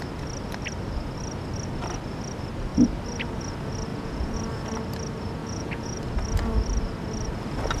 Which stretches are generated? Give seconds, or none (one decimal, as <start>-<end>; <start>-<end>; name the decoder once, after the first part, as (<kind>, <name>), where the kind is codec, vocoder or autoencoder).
3.9-4.4 (vocoder, Vocos); 5.4-6.0

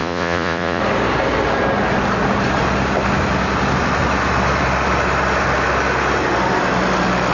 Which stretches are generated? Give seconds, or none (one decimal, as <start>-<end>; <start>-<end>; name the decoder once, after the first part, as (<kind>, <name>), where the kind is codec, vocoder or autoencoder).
0.0-0.8 (vocoder, Vocos)

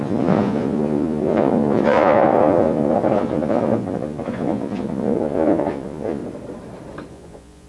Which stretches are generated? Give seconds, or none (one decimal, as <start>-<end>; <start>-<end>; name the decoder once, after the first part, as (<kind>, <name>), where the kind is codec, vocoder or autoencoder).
0.0-6.2 (vocoder, Vocos); 7.1-7.7

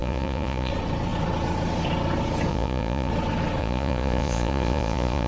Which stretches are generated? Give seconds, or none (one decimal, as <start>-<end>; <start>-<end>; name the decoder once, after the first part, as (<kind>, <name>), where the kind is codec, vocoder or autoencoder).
0.0-0.7 (vocoder, Vocos); 2.5-3.1; 3.6-5.3

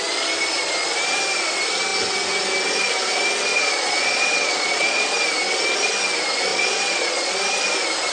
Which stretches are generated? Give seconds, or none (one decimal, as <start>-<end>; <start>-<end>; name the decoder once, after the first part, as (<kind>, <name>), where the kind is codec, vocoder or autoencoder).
3.5-5.1 (vocoder, Vocos); 6.5-7.3

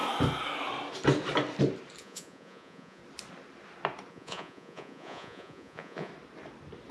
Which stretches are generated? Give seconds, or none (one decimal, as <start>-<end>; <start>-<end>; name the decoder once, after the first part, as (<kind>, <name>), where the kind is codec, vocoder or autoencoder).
2.0-3.0 (vocoder, Vocos); 4.1-6.1

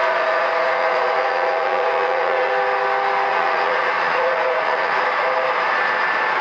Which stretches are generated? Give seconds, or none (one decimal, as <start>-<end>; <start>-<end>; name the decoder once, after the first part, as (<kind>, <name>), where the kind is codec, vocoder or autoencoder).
0.0-2.5 (vocoder, Vocos); 3.3-5.0

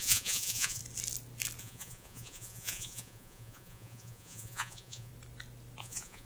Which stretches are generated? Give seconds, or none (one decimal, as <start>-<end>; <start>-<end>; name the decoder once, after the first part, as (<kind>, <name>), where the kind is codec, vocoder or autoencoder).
0.0-0.8 (vocoder, Vocos); 1.6-5.1; 5.8-6.2